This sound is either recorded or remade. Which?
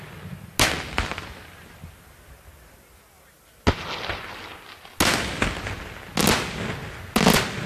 recorded